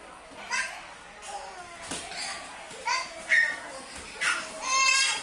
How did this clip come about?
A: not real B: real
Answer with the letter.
B